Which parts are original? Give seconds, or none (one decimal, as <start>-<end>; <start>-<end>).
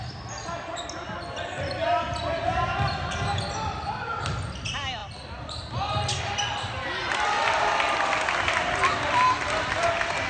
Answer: 0.0-10.3